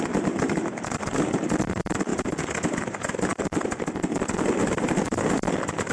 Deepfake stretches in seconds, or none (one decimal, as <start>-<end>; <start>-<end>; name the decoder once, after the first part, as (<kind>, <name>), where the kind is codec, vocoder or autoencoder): none